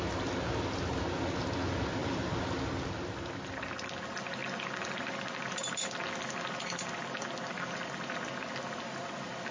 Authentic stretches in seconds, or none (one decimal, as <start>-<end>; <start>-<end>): 0.0-9.5